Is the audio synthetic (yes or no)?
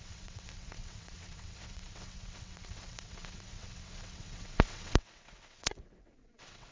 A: yes